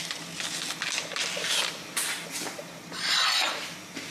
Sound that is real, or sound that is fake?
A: real